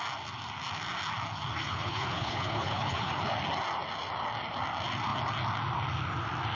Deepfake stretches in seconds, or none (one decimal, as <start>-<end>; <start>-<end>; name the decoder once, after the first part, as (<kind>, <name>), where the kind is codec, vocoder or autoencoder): 1.7-3.1 (codec, HILCodec)

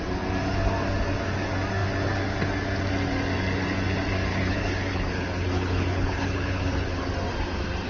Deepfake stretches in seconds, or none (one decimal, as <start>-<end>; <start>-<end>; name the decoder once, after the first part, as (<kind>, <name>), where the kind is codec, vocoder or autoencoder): 4.3-7.1 (codec, HILCodec)